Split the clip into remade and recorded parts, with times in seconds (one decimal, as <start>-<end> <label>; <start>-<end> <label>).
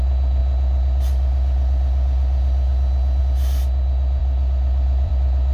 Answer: 0.0-4.2 recorded; 4.2-5.1 remade; 5.1-5.5 recorded